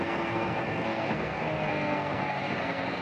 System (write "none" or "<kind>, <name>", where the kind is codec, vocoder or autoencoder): codec, SNAC